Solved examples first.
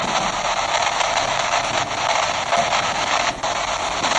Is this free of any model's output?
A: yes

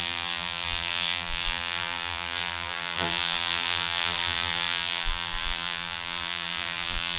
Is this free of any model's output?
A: no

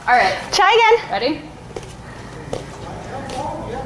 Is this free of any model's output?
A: no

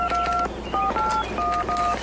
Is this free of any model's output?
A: yes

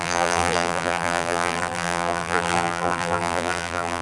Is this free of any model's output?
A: no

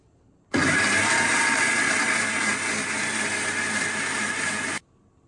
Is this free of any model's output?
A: no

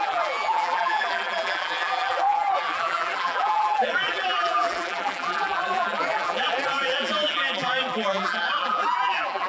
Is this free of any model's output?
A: no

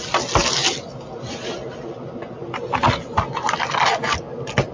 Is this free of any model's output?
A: yes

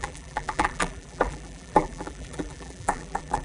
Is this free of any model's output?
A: no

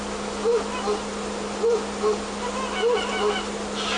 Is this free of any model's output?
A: yes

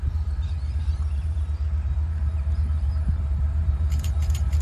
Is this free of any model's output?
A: no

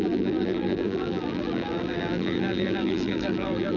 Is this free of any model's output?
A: no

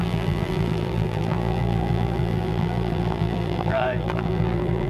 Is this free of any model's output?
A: no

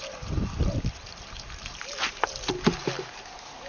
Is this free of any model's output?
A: no